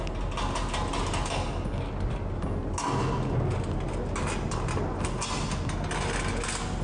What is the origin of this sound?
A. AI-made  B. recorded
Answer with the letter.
B